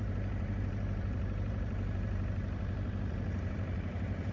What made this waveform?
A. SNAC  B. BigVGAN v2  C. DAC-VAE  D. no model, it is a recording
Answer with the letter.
B